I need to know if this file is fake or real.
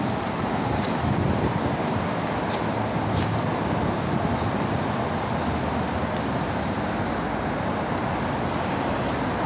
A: real